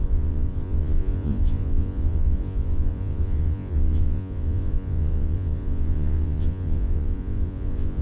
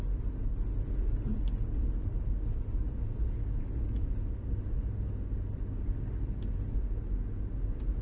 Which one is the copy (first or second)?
first